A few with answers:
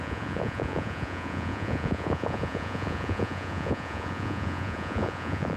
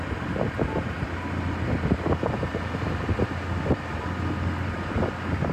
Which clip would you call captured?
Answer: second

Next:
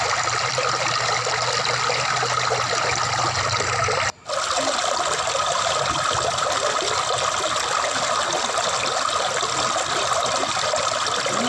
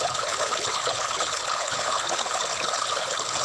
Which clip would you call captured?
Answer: first